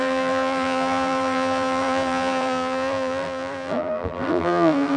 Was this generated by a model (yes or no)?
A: yes